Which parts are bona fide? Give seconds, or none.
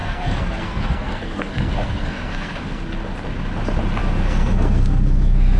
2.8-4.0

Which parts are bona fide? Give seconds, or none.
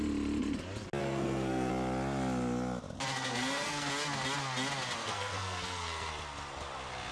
0.0-1.0; 1.7-3.1; 3.9-5.0; 6.1-7.1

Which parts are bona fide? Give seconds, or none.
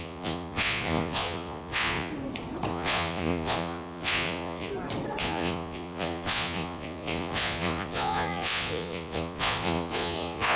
2.1-2.7; 4.7-5.2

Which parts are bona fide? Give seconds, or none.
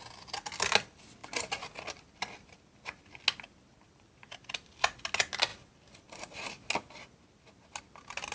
0.0-8.3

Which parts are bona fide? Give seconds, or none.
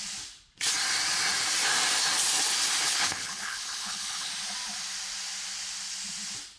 0.0-2.8; 4.3-6.6